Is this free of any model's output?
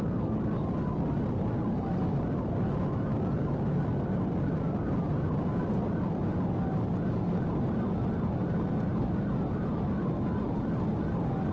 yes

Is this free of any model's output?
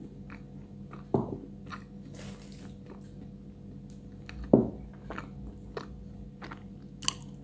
yes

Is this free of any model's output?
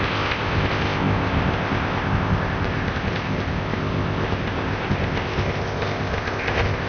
no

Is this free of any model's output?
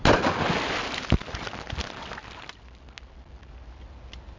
yes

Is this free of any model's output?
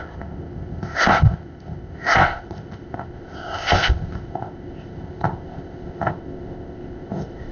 no